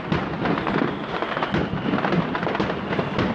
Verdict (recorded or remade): recorded